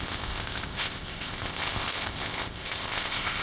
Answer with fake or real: fake